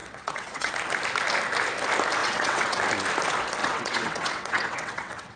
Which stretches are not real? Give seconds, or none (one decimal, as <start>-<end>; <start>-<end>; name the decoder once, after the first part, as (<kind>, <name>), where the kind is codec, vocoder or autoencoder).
0.0-0.7 (vocoder, WaveNeXt); 2.2-2.8; 3.6-5.4